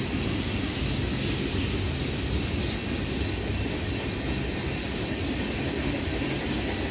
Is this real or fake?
real